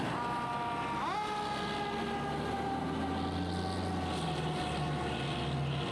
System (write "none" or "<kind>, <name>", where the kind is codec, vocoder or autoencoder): none